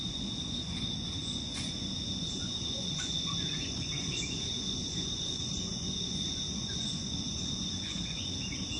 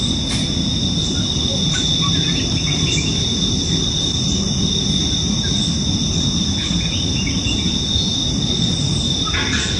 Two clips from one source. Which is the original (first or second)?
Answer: second